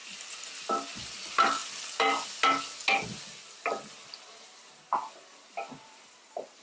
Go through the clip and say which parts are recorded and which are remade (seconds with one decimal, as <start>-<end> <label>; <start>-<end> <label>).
0.0-6.6 recorded